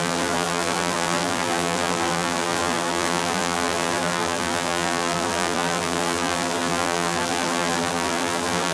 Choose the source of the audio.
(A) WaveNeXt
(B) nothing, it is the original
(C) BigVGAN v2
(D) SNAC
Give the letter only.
C